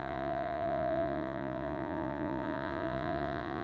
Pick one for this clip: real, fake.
fake